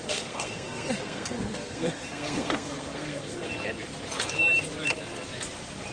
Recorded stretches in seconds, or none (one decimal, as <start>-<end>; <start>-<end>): 3.5-5.9